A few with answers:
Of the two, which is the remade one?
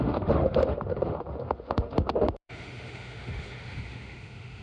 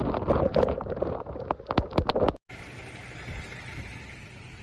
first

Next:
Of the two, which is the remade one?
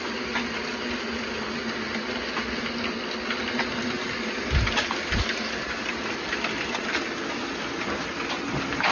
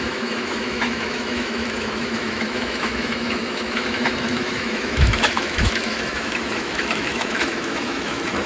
second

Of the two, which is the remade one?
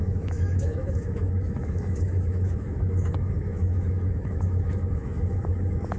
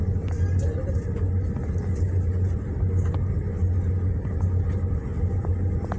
first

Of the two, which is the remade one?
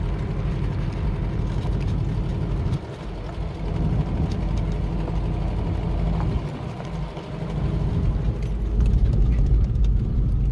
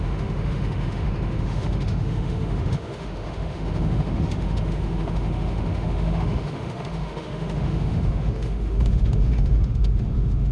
second